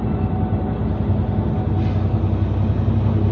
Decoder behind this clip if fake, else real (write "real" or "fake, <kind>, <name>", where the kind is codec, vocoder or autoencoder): real